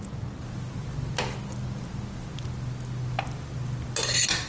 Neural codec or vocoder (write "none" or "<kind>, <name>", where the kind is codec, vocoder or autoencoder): none